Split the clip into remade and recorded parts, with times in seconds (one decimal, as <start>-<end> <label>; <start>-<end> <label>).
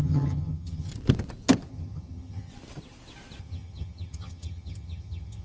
0.0-0.9 remade; 0.9-1.7 recorded; 1.7-2.5 remade; 2.5-3.4 recorded; 3.4-5.4 remade